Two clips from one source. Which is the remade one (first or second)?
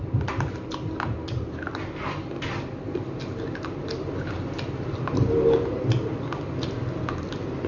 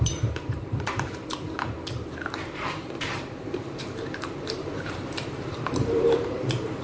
second